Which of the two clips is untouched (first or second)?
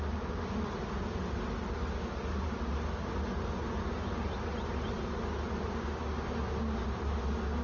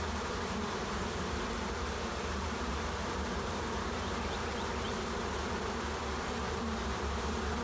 first